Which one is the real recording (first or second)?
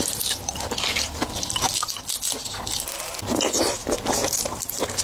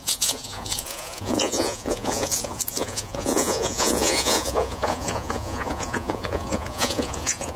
first